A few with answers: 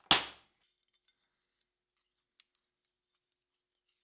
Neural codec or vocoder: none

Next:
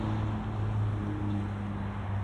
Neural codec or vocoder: none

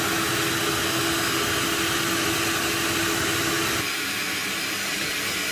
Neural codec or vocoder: none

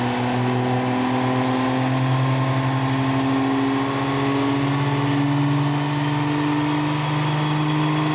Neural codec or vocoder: none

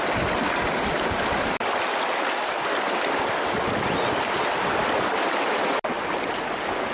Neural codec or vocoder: none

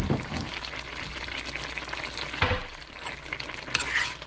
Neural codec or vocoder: none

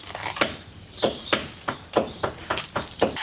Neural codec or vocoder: none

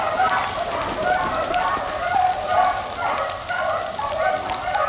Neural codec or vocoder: none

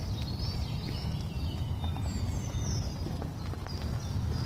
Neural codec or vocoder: none